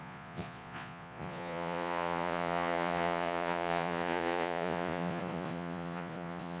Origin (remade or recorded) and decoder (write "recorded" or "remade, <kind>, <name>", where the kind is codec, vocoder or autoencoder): remade, vocoder, Vocos